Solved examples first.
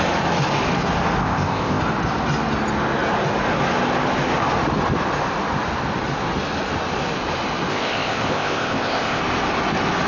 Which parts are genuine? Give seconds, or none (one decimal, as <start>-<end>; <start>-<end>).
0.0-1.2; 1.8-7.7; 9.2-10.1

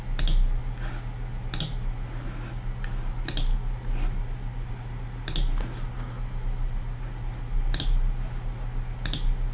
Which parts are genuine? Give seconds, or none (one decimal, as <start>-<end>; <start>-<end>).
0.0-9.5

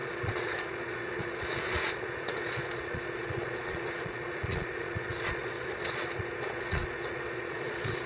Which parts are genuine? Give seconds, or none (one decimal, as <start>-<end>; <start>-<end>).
none

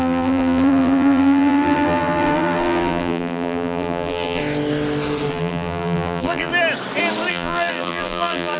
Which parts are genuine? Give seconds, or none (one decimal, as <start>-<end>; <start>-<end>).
4.4-5.3; 6.5-7.3

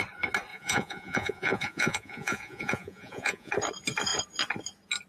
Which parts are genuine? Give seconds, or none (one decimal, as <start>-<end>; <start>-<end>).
0.0-0.5; 3.5-5.1

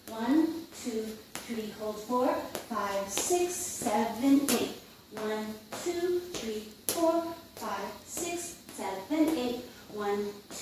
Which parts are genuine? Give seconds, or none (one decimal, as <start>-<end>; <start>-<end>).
0.0-1.2; 5.0-5.8; 6.5-7.3; 9.9-10.6